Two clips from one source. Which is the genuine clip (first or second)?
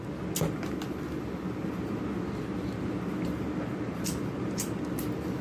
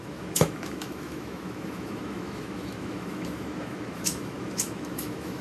first